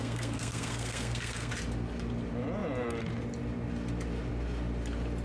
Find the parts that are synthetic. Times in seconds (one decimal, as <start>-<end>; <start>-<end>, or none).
0.0-1.5